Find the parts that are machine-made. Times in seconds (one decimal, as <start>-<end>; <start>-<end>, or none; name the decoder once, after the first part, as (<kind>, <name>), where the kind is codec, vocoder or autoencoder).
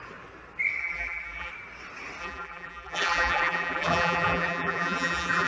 0.8-1.5 (vocoder, BigVGAN v2); 2.2-5.5